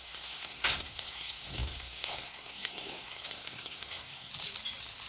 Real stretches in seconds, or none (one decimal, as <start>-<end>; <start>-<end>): 4.3-5.1